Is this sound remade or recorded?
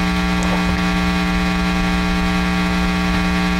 recorded